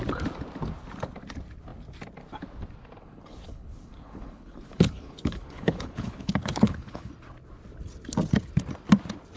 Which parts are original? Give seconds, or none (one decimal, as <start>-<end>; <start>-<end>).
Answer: 0.0-3.0; 7.1-9.4